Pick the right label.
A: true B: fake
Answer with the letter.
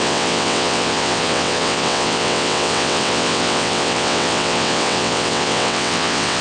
B